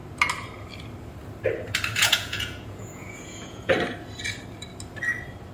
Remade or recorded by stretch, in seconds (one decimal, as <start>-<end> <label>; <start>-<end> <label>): 0.0-2.0 recorded; 2.0-3.7 remade; 3.7-5.5 recorded